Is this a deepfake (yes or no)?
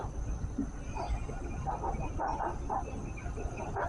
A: no